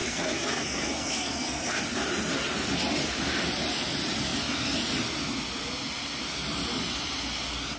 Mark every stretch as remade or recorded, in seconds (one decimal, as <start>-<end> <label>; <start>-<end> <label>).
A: 0.0-1.8 remade; 1.8-7.8 recorded